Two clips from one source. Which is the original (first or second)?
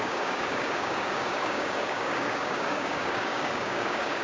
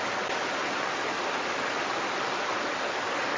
second